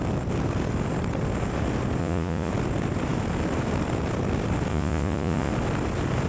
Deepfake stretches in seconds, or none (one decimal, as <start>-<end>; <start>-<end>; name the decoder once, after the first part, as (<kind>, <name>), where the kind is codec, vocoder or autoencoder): 2.0-2.5 (vocoder, Vocos); 4.7-5.5